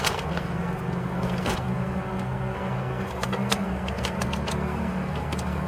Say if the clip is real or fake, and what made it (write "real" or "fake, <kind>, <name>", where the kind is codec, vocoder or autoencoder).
fake, codec, SNAC